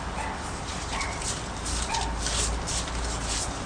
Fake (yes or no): no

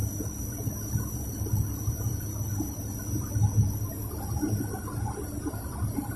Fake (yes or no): no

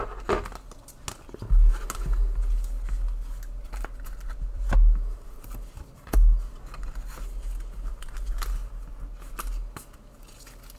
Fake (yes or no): no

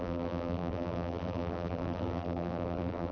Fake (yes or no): yes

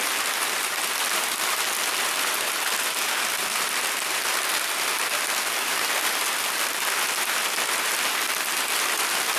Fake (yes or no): no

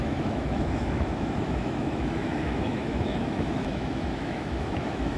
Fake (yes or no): yes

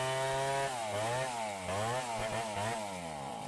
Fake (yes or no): no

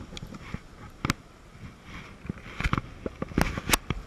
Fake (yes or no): no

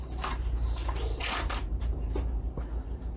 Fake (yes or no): yes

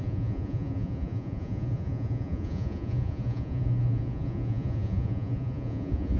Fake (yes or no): yes